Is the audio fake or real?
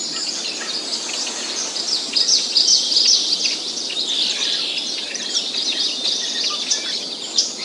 real